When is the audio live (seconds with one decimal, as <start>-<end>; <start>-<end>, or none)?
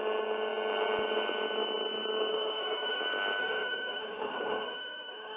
0.0-2.3; 3.0-3.4